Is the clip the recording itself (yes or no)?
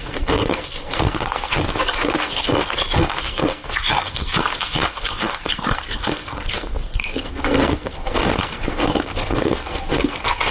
no